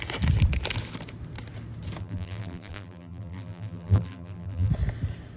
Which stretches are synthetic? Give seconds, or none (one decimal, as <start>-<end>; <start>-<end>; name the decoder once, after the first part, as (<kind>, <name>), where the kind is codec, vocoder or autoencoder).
2.0-4.7 (vocoder, BigVGAN v2)